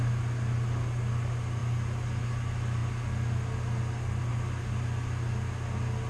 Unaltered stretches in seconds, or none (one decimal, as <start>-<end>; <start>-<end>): 0.0-6.1